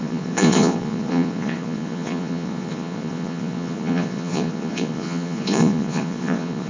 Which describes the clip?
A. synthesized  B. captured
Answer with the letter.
A